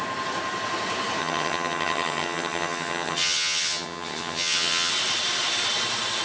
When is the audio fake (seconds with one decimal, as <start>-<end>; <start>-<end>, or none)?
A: 1.2-4.9